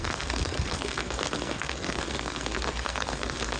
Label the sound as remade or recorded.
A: remade